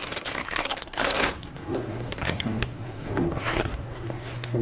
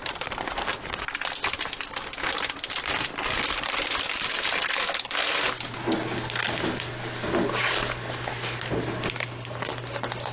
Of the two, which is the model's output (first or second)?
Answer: first